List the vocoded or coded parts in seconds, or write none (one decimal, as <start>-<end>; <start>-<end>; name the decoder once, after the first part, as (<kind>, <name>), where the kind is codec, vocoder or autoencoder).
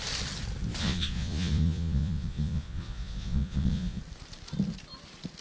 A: 0.8-4.0 (vocoder, Vocos)